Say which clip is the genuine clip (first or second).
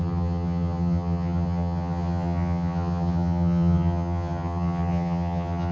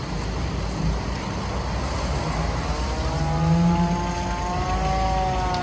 second